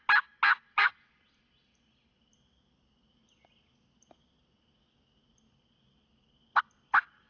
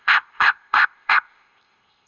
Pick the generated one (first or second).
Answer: second